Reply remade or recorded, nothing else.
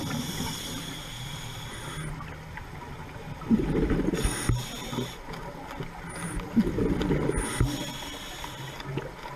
recorded